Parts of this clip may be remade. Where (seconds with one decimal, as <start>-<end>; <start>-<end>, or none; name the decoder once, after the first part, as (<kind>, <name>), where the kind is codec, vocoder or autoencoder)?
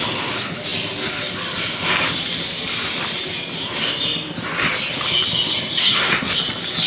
5.8-6.4 (codec, SNAC)